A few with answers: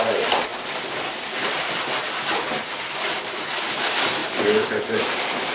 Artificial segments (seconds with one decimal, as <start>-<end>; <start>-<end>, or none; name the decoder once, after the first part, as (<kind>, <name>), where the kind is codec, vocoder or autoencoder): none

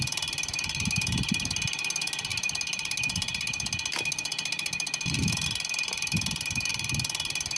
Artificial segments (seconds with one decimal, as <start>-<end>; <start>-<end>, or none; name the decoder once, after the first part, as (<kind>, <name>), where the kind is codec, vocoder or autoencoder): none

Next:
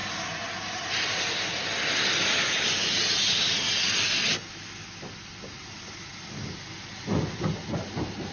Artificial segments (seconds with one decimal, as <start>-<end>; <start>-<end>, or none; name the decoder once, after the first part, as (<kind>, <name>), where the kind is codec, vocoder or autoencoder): none